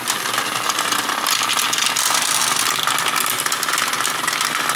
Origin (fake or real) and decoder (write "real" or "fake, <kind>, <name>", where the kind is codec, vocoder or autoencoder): real